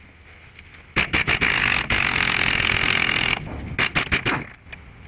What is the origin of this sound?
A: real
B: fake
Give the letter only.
A